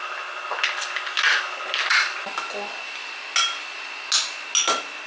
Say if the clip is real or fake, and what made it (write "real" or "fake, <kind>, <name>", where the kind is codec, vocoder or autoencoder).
real